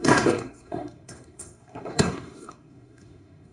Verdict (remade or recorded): remade